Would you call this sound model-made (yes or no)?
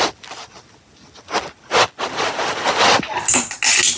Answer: no